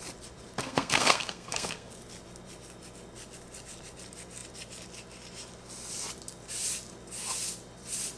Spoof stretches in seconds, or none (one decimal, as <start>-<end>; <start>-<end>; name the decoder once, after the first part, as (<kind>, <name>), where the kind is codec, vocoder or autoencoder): 0.6-1.9 (codec, SNAC)